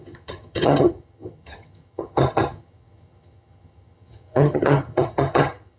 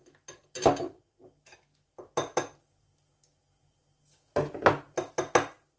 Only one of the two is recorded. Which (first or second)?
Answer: second